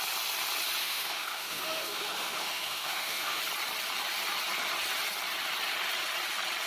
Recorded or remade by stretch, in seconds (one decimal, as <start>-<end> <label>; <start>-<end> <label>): 0.0-0.8 recorded; 0.8-3.4 remade; 3.4-6.7 recorded